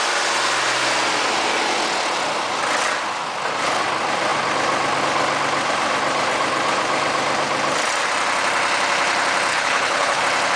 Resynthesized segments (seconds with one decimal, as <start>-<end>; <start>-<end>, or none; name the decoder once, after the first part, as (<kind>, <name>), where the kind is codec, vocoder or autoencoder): 9.5-10.2 (codec, HILCodec)